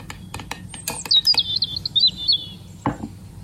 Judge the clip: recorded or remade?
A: recorded